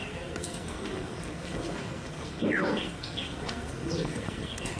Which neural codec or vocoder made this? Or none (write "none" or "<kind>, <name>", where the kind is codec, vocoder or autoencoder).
codec, SNAC